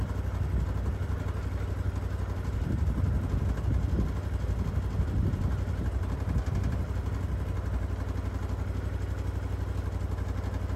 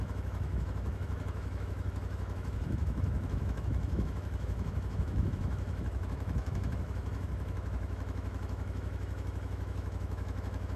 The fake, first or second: second